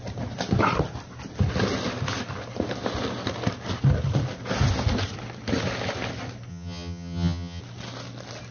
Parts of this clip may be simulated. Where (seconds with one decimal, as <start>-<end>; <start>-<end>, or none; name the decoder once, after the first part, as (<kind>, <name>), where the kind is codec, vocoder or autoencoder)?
6.5-7.6 (vocoder, HiFi-GAN)